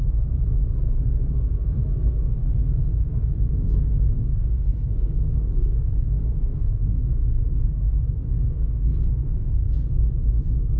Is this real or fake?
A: fake